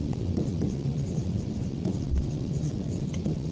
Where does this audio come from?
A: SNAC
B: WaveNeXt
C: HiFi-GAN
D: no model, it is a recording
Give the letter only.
B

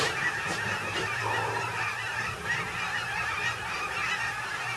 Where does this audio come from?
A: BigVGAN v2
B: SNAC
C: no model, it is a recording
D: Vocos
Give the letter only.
A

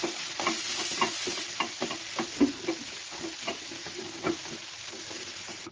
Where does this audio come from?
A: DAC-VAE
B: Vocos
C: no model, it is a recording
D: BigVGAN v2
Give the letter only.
C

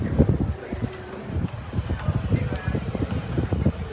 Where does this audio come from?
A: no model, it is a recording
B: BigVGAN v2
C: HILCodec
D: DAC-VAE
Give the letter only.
A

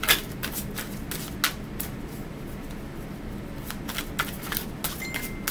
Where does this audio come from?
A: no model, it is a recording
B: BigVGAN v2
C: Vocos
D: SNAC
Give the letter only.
A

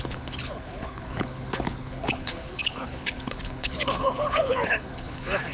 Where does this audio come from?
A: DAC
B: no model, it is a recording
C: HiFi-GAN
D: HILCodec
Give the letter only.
D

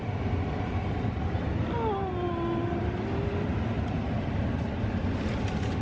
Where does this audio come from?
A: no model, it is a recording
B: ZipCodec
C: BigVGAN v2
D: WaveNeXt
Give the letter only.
A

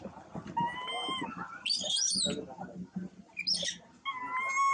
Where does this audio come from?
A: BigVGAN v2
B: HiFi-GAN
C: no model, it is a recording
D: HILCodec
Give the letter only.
C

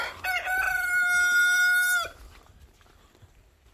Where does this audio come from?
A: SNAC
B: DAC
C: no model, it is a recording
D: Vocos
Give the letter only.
C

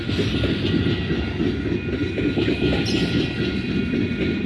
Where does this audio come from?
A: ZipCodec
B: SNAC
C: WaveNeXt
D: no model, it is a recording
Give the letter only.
D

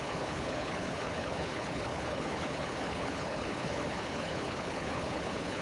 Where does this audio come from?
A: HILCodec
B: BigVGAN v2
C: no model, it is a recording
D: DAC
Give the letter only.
A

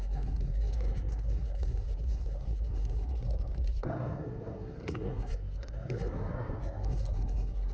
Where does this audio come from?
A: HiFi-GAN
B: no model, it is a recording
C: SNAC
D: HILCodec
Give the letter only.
C